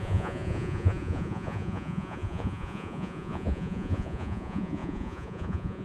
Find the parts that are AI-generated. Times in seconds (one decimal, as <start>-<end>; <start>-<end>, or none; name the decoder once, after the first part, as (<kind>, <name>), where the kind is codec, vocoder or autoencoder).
0.0-5.8 (vocoder, Vocos)